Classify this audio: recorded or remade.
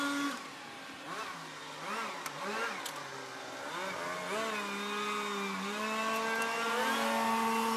recorded